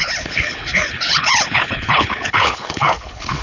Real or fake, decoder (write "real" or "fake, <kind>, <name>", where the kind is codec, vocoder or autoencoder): fake, codec, HILCodec